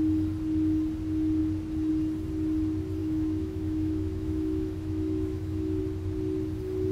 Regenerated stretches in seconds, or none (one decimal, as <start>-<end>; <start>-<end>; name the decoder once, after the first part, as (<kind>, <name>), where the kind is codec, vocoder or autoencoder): 3.0-5.8 (autoencoder, DAC-VAE)